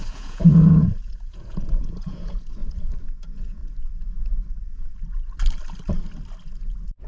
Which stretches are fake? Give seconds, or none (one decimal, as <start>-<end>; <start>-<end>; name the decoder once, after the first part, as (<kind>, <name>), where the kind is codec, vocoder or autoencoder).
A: 0.0-2.6 (vocoder, Vocos); 3.1-3.6